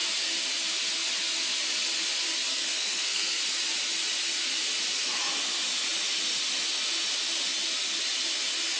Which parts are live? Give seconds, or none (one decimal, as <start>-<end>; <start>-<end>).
0.0-2.5; 3.4-8.8